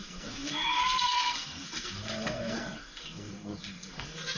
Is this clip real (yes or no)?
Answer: no